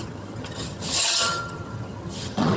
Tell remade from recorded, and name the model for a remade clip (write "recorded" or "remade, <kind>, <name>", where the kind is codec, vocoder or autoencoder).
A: remade, vocoder, HiFi-GAN